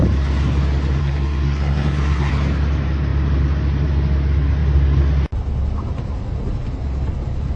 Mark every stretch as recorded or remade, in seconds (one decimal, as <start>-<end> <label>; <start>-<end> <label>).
0.0-1.0 recorded; 1.0-2.3 remade; 2.3-7.6 recorded